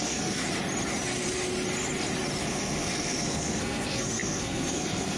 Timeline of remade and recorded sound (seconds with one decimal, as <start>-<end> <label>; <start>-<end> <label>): 0.0-0.4 remade; 0.4-2.4 recorded; 2.4-5.2 remade